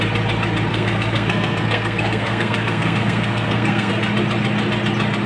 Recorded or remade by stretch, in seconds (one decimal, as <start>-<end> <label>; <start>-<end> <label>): 0.0-0.7 recorded; 0.7-3.9 remade; 3.9-5.3 recorded